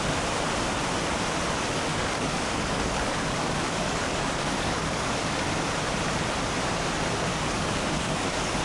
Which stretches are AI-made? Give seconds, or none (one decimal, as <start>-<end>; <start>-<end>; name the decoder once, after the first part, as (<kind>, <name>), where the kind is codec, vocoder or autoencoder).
1.9-5.4 (codec, DAC); 7.3-8.6